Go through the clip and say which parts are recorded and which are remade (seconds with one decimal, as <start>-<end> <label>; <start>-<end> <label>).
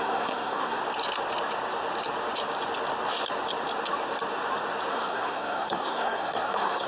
0.0-0.8 remade; 0.8-4.9 recorded; 4.9-6.9 remade